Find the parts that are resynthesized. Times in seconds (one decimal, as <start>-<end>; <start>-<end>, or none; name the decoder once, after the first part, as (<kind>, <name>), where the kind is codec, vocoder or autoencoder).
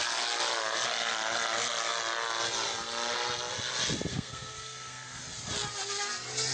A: 4.1-5.2 (codec, SNAC)